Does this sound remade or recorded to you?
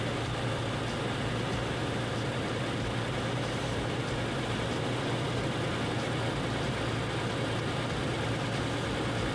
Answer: recorded